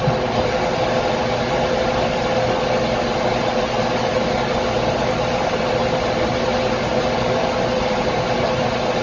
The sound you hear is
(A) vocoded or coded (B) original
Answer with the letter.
B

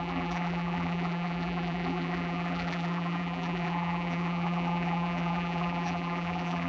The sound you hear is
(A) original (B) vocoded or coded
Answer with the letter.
B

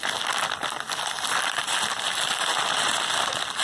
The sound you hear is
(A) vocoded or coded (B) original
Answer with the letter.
B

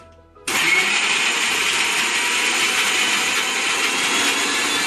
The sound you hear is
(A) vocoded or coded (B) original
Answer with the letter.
B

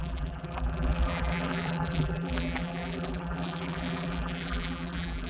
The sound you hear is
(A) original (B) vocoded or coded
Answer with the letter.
B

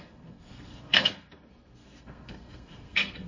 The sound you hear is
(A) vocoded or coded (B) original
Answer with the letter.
A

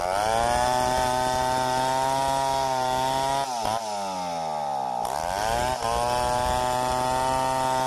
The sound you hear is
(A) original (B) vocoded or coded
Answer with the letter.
A